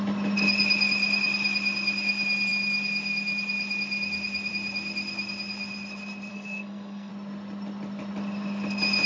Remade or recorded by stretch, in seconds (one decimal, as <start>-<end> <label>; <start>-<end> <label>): 0.0-6.3 recorded; 6.3-7.1 remade; 7.1-9.1 recorded